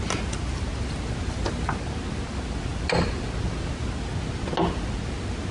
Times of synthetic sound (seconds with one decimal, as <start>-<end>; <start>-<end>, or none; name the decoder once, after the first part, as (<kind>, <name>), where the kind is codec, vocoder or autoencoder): none